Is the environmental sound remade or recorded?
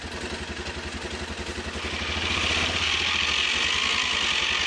recorded